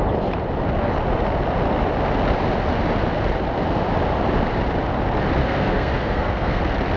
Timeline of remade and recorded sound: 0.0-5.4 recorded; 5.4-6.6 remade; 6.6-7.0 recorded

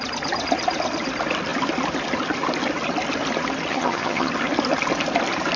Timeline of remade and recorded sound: 0.0-3.7 recorded; 3.7-4.3 remade; 4.3-5.6 recorded

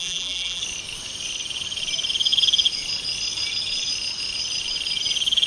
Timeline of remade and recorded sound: 0.0-0.6 remade; 0.6-5.5 recorded

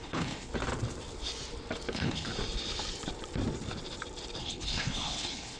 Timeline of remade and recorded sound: 0.0-0.5 remade; 0.5-1.9 recorded; 1.9-2.3 remade; 2.3-4.4 recorded; 4.4-5.6 remade

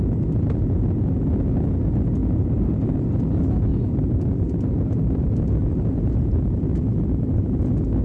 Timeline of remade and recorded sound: 0.0-2.2 recorded; 2.2-3.1 remade; 3.1-3.7 recorded; 3.7-7.6 remade; 7.6-8.0 recorded

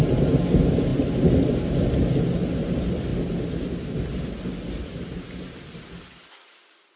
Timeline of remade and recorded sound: 0.0-7.0 recorded

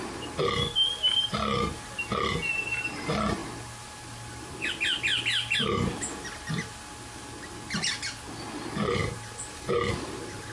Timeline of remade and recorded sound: 0.0-10.5 recorded